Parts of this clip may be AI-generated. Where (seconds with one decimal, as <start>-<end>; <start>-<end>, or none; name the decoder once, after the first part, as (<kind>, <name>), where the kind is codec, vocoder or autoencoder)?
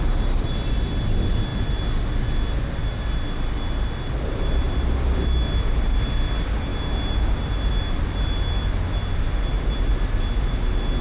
none